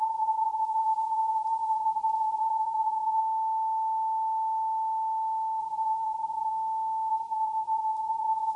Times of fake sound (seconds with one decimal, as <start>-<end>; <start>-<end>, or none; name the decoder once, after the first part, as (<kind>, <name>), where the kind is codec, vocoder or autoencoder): 0.0-3.2 (vocoder, Vocos); 5.6-6.5; 7.1-8.6